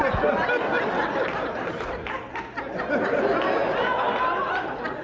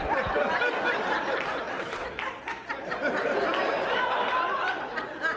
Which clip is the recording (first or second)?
first